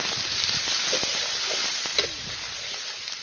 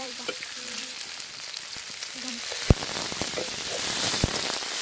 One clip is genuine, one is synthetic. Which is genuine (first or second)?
first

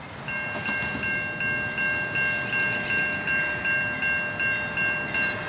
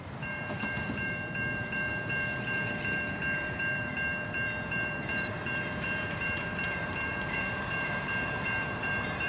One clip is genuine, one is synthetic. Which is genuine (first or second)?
first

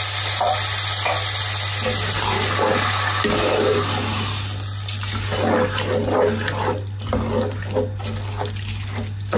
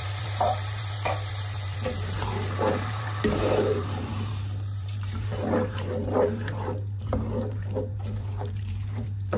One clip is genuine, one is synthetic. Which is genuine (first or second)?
first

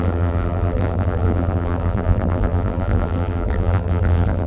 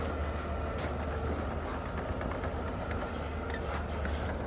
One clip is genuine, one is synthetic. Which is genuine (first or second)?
second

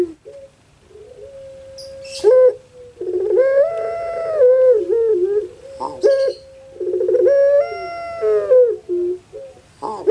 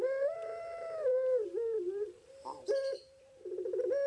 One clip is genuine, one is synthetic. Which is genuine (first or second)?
first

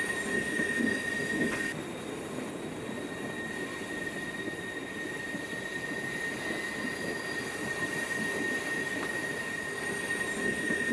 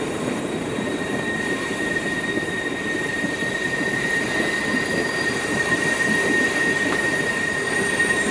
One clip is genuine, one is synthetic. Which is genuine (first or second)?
first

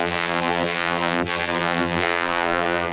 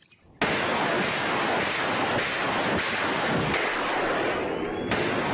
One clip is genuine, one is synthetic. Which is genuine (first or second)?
second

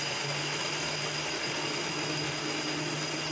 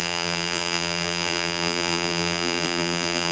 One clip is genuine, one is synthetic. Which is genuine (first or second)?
first